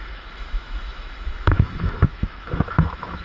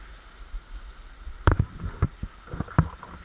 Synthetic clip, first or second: first